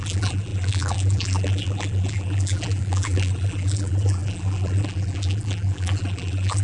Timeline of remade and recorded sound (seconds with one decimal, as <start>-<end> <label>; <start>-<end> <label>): 0.0-6.6 remade